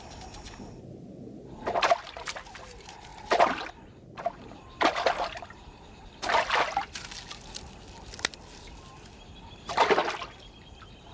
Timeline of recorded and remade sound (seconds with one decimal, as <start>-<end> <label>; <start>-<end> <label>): 0.0-11.1 recorded